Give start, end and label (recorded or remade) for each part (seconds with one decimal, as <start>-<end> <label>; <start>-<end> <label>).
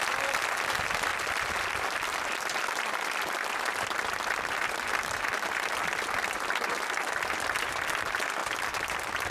0.0-1.1 recorded; 1.1-3.6 remade; 3.6-8.4 recorded; 8.4-9.3 remade